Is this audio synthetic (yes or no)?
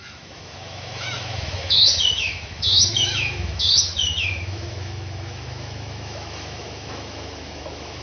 yes